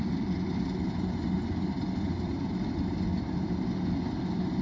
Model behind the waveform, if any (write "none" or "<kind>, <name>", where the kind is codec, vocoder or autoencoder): none